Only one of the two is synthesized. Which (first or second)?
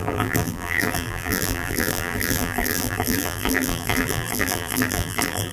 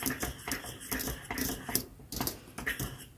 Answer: first